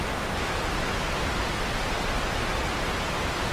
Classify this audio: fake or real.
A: real